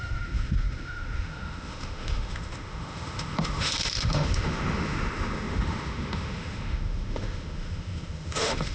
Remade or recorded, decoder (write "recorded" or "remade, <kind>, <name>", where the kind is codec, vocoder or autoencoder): remade, autoencoder, DAC-VAE